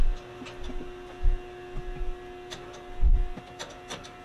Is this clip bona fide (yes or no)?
yes